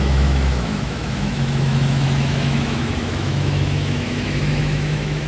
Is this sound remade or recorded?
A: remade